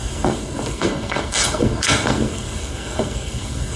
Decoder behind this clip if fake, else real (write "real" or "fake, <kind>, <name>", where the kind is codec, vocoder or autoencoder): fake, codec, SNAC